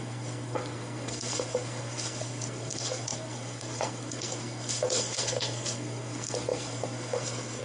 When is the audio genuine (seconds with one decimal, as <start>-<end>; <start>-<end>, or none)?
none